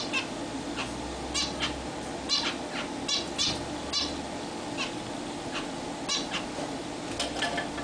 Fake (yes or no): no